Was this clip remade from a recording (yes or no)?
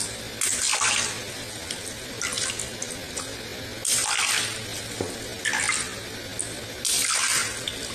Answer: no